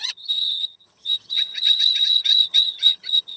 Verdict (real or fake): fake